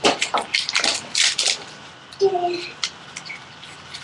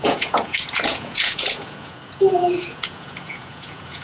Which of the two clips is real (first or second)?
first